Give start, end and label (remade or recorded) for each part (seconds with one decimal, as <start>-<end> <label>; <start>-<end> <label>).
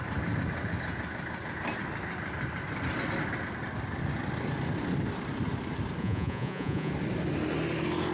0.0-6.0 recorded; 6.0-6.9 remade; 6.9-8.1 recorded